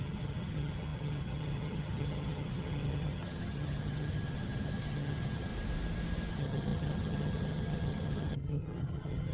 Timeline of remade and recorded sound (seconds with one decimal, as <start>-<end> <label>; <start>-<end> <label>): 0.0-5.5 remade; 5.5-6.3 recorded; 6.3-9.3 remade